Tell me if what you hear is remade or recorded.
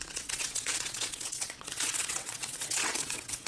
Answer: remade